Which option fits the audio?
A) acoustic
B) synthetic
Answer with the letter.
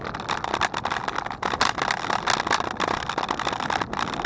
A